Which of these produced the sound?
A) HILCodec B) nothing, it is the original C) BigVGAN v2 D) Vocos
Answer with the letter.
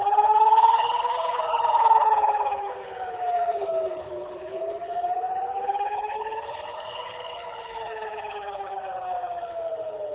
A